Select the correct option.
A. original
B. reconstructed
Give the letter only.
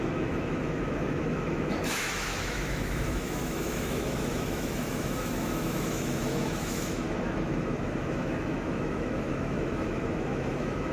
B